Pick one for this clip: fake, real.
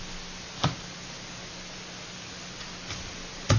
real